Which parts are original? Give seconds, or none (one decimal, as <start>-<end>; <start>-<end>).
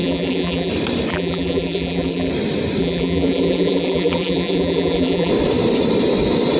0.7-1.1; 2.3-2.8; 5.3-6.6